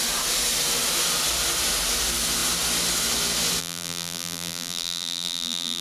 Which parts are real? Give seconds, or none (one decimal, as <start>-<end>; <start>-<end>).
0.0-3.6